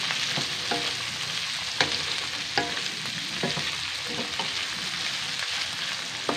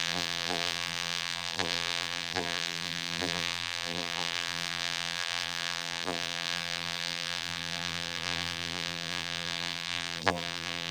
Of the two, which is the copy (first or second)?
second